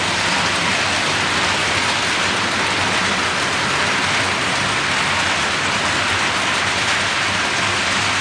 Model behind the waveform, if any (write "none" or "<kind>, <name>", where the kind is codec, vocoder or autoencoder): none